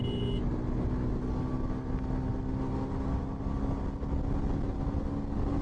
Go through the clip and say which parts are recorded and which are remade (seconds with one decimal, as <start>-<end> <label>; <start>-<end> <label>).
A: 0.0-5.6 recorded